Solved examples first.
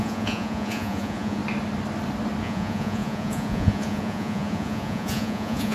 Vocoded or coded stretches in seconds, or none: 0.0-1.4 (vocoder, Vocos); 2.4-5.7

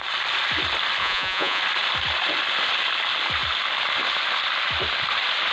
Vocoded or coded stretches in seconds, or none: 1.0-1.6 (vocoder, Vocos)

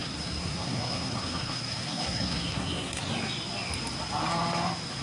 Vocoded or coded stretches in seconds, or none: 0.0-3.0 (codec, SNAC)

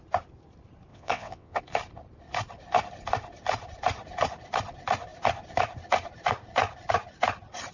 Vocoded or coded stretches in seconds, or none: 0.9-1.6 (vocoder, WaveNeXt)